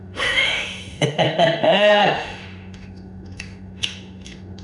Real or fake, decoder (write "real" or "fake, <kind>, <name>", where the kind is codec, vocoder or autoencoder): fake, autoencoder, DAC-VAE